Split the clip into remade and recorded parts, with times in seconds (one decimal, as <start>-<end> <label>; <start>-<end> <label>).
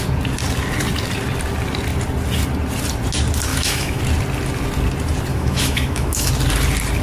0.0-3.5 recorded; 3.5-4.0 remade; 4.0-5.3 recorded; 5.3-6.3 remade; 6.3-7.0 recorded